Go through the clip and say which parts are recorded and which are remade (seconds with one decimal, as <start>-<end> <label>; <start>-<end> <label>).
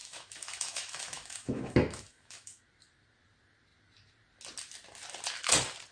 0.0-2.6 remade; 2.6-5.9 recorded